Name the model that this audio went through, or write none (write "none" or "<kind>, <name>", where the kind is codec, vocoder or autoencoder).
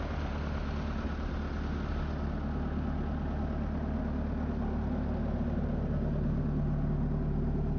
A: none